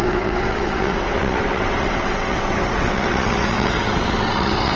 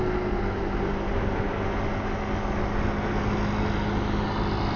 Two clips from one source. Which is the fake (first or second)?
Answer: first